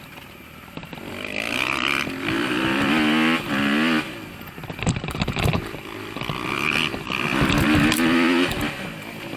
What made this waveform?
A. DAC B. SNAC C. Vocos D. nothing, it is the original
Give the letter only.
D